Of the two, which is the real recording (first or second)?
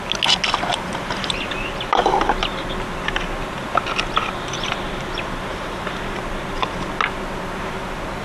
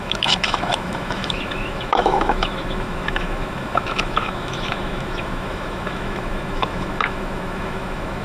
first